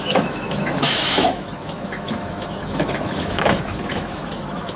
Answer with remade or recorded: remade